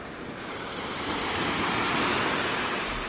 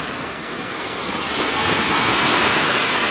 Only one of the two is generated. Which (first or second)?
second